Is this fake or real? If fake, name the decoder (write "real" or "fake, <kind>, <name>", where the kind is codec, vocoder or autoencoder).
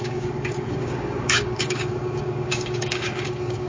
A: fake, codec, DAC